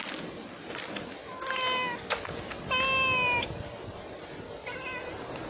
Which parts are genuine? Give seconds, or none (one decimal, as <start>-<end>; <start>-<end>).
0.0-5.5